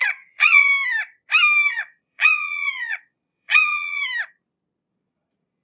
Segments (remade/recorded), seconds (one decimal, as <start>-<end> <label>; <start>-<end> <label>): 0.0-0.7 remade; 0.7-1.7 recorded; 1.7-4.0 remade; 4.0-4.9 recorded; 4.9-5.6 remade